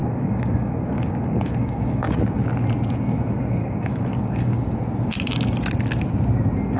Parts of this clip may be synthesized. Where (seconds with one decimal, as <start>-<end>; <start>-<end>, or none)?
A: 0.0-2.2; 3.6-4.8